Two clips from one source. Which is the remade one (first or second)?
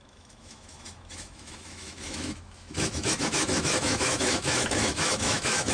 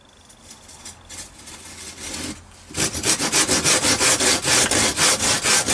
first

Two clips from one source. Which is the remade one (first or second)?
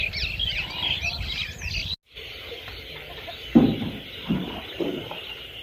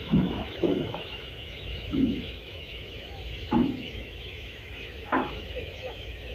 second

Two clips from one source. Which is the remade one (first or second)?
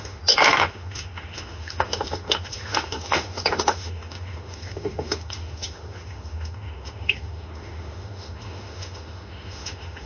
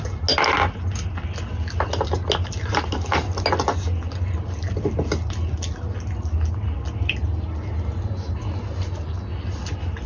first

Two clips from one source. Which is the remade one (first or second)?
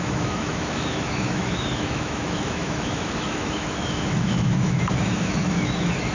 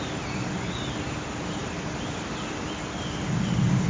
first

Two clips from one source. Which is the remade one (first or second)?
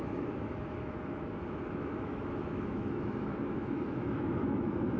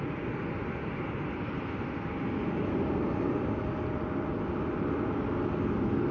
first